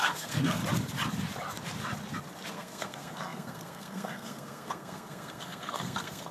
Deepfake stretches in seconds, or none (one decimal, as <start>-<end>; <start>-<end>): 0.0-0.6; 2.5-6.3